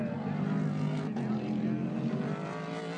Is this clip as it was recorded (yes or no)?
yes